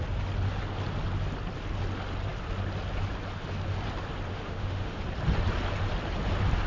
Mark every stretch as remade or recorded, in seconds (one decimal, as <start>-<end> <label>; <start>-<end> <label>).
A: 0.0-4.3 recorded; 4.3-5.0 remade; 5.0-6.7 recorded